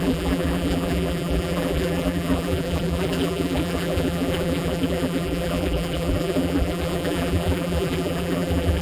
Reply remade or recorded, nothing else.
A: remade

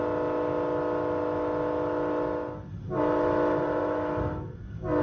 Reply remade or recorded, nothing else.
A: recorded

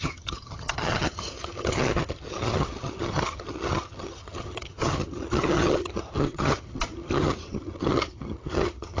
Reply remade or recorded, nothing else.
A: remade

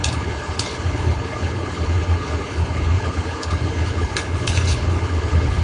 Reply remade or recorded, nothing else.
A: remade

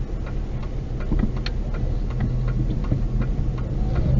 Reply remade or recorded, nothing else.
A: recorded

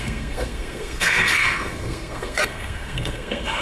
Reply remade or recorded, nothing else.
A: remade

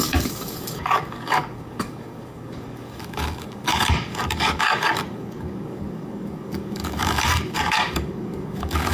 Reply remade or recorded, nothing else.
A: remade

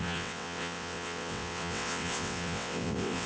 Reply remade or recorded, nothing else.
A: remade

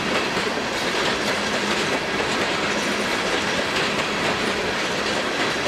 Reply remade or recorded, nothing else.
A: recorded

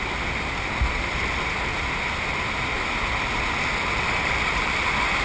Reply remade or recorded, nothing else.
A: recorded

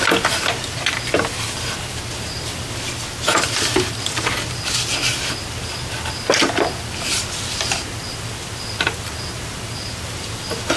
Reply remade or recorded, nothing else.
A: recorded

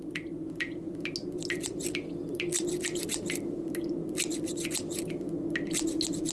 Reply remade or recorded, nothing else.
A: recorded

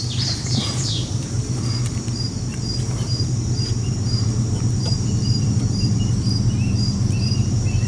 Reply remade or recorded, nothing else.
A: remade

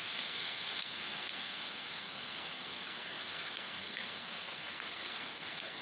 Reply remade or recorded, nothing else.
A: remade